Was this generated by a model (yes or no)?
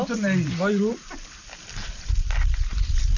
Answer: no